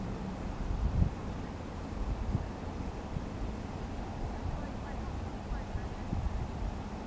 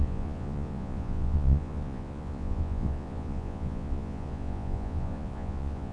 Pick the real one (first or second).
first